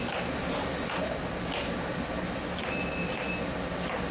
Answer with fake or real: real